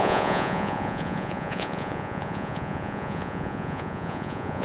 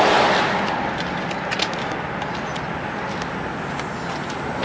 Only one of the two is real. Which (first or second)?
second